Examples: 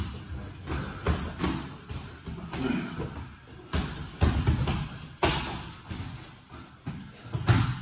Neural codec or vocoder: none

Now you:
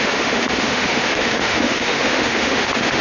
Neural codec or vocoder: autoencoder, DAC-VAE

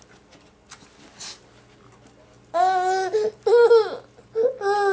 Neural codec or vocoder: none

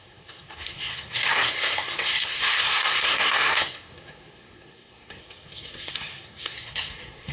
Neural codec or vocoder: codec, SNAC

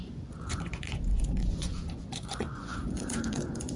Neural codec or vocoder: vocoder, Vocos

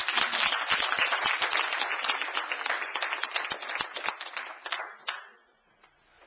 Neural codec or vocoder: none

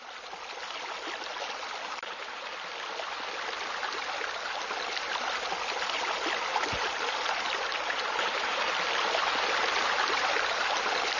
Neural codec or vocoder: none